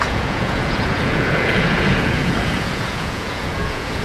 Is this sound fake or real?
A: fake